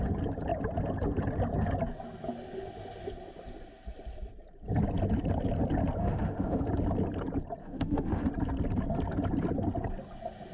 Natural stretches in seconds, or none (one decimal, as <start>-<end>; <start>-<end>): 0.0-6.0; 6.6-7.6; 8.3-10.5